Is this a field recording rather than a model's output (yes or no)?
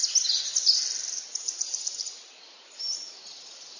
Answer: yes